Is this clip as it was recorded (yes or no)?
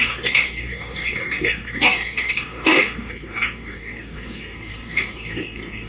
no